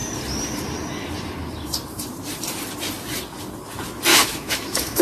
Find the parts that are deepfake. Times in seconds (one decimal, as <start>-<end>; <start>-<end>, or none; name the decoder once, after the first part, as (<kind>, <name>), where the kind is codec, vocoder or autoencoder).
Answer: 4.1-5.0 (autoencoder, DAC-VAE)